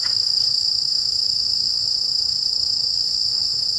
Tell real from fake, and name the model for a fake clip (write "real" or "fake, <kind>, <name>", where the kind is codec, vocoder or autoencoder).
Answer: fake, autoencoder, DAC-VAE